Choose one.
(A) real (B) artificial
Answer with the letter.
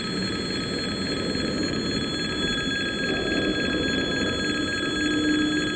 A